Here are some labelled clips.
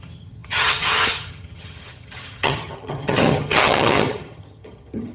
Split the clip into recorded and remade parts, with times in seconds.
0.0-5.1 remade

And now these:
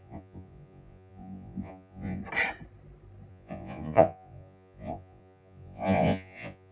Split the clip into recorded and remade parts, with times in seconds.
0.0-2.2 remade; 2.2-3.3 recorded; 3.3-6.7 remade

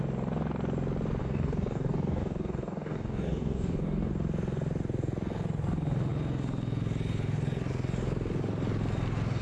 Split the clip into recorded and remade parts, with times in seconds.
0.0-1.2 recorded; 1.2-4.1 remade; 4.1-9.4 recorded